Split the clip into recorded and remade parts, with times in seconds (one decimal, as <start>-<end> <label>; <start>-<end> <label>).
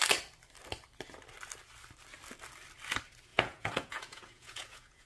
0.0-3.3 recorded; 3.3-5.1 remade